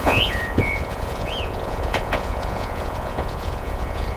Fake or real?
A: fake